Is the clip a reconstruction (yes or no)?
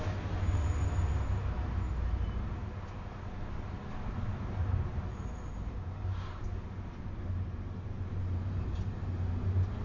no